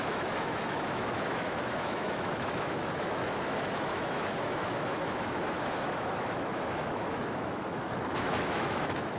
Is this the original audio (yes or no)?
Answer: no